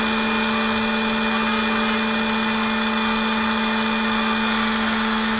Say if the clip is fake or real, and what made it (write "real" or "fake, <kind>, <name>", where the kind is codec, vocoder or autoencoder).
real